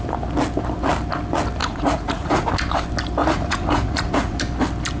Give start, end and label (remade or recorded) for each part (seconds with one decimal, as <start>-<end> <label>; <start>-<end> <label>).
0.0-1.6 recorded; 1.6-2.5 remade; 2.5-3.2 recorded; 3.2-4.4 remade; 4.4-5.0 recorded